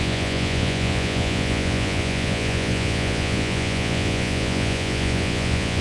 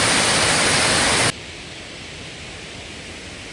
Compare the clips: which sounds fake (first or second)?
first